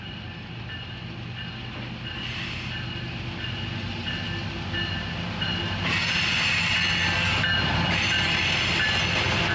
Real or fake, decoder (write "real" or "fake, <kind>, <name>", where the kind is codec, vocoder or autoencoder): real